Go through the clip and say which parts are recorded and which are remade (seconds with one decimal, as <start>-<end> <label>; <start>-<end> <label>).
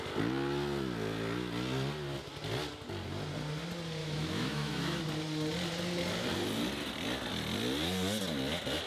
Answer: 0.0-4.0 recorded; 4.0-5.0 remade; 5.0-8.9 recorded